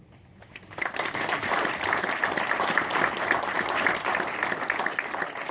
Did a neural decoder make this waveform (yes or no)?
no